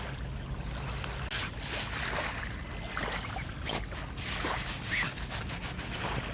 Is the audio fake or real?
real